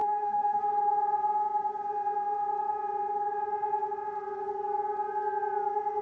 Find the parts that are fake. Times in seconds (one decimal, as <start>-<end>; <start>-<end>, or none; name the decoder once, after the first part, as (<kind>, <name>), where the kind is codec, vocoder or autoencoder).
0.0-0.6 (codec, DAC)